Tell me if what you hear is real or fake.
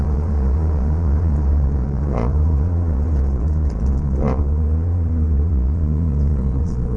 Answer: fake